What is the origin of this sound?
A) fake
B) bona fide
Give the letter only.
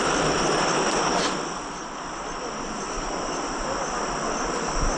B